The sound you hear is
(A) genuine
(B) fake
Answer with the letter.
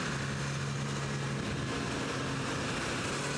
A